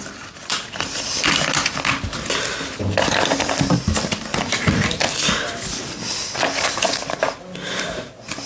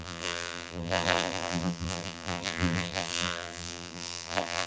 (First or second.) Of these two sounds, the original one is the first